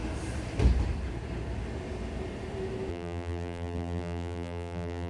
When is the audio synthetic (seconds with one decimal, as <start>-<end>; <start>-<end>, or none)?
2.9-5.1